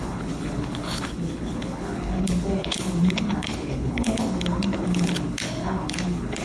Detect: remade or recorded remade